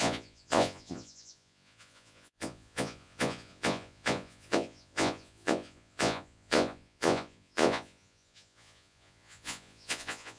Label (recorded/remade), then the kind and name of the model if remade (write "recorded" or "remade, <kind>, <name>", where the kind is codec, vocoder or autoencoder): remade, vocoder, Vocos